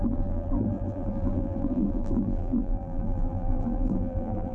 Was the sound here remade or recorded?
remade